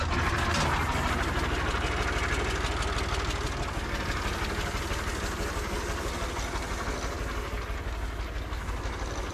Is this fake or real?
real